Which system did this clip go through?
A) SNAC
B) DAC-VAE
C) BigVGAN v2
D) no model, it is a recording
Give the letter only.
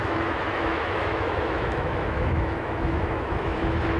B